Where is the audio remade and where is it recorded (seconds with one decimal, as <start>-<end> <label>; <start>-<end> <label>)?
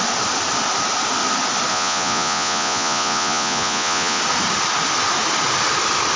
0.0-1.7 recorded; 1.7-4.2 remade; 4.2-6.2 recorded